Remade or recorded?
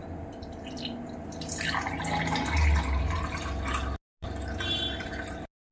recorded